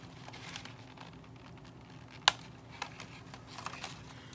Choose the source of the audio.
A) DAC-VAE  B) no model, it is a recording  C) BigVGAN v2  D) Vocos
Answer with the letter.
B